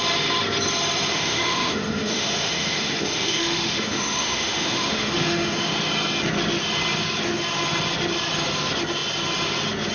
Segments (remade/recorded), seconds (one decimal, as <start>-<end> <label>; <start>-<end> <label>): 0.0-1.1 recorded; 1.1-5.7 remade; 5.7-9.9 recorded